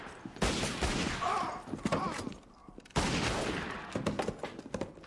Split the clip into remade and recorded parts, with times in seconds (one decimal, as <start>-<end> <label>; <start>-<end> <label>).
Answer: 0.0-5.1 recorded